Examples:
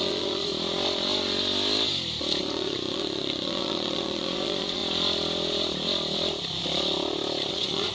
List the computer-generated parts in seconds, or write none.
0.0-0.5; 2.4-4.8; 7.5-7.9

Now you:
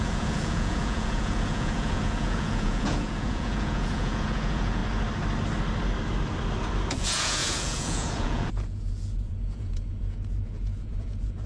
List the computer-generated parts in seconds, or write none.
0.0-4.8; 6.9-11.5

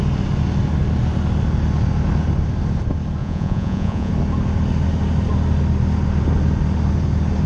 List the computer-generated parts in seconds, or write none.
3.2-4.1

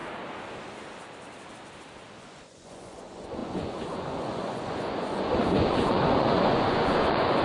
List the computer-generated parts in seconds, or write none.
2.2-7.4

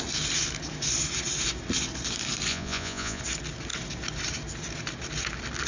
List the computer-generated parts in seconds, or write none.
2.5-3.2

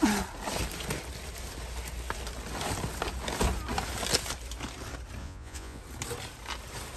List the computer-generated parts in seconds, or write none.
5.2-5.8

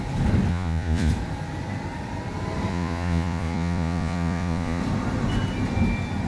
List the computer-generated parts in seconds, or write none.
0.5-1.1; 2.7-4.8

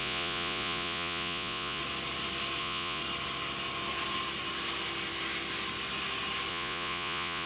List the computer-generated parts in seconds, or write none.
0.0-1.8; 2.6-3.0; 6.5-7.5